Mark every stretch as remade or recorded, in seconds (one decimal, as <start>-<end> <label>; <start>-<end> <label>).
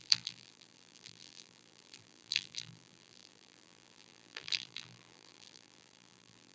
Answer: 0.0-6.5 remade